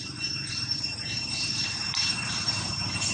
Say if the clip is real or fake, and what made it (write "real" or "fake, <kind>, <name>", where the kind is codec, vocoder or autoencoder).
fake, vocoder, BigVGAN v2